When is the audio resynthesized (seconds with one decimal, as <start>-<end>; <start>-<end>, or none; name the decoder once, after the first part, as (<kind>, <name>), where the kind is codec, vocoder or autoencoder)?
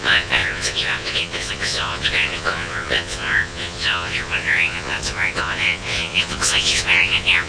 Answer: 0.0-7.5 (vocoder, Vocos)